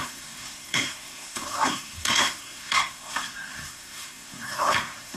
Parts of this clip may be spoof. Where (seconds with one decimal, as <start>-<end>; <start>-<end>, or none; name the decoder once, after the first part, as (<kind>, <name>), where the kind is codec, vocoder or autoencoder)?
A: 0.0-5.2 (codec, SNAC)